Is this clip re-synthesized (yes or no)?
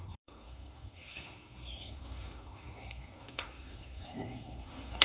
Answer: yes